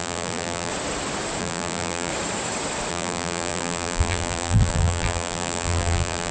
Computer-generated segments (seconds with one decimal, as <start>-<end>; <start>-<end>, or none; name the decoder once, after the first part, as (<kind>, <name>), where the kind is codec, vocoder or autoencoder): 0.0-0.7 (vocoder, BigVGAN v2); 1.4-2.1; 2.9-6.3